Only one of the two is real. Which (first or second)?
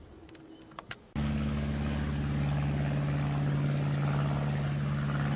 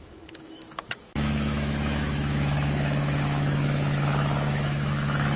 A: first